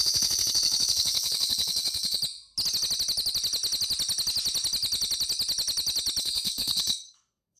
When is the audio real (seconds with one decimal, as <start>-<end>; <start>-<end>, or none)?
2.2-6.2